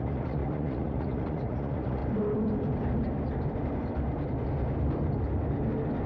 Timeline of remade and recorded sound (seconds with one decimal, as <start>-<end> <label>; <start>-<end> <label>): 0.0-2.0 remade; 2.0-6.1 recorded